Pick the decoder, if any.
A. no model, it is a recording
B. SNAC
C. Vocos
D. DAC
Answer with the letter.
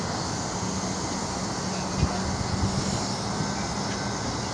A